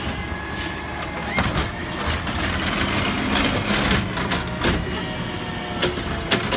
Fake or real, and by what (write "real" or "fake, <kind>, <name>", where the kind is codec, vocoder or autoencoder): real